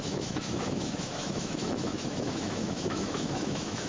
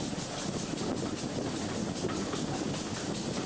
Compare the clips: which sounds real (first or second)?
second